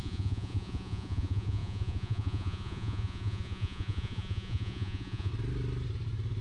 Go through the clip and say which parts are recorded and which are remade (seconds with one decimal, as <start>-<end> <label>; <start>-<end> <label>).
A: 0.0-5.3 remade; 5.3-6.4 recorded